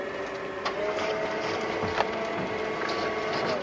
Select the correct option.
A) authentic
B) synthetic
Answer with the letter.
A